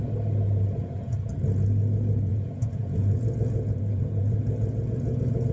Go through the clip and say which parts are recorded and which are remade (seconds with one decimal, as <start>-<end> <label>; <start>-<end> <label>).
0.0-0.8 recorded; 0.8-1.3 remade; 1.3-2.3 recorded; 2.3-5.5 remade